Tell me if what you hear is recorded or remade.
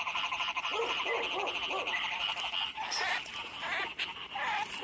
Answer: remade